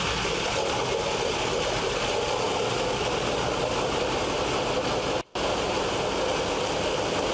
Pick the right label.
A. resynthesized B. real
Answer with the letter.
B